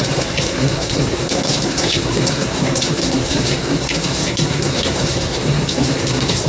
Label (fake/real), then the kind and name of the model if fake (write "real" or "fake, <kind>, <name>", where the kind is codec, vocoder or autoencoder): fake, codec, SNAC